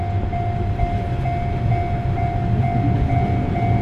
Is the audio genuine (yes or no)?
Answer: yes